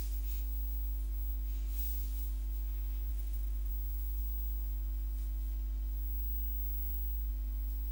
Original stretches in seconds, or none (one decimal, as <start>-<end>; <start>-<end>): 0.0-3.1; 3.7-7.9